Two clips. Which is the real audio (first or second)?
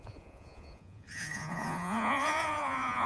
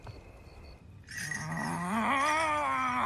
second